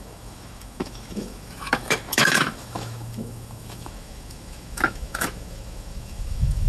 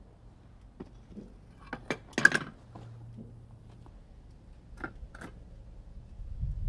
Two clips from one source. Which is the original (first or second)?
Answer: second